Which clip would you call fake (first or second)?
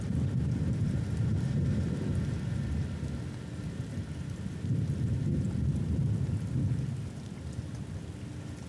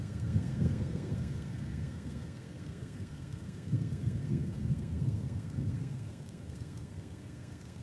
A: second